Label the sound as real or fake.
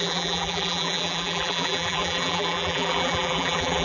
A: fake